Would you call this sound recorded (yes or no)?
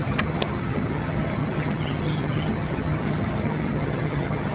no